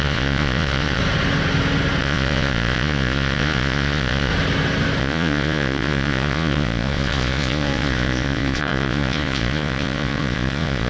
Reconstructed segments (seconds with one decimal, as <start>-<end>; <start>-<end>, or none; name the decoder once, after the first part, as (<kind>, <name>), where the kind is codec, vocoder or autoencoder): 0.0-1.0 (vocoder, Vocos); 2.0-4.3; 5.0-10.9